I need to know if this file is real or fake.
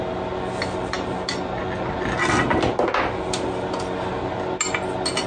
real